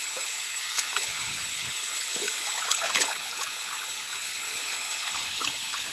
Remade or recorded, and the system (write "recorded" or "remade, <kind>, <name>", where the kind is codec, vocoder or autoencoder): remade, codec, HILCodec